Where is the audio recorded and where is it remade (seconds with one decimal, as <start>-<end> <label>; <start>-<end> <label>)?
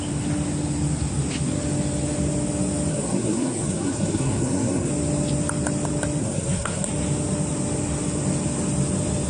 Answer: 0.0-2.9 recorded; 2.9-4.9 remade; 4.9-6.2 recorded; 6.2-6.9 remade; 6.9-9.3 recorded